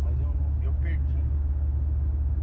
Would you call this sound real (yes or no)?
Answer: yes